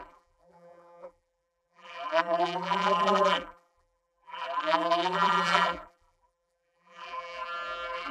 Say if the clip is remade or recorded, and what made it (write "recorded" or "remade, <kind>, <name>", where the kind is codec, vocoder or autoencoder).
remade, vocoder, BigVGAN v2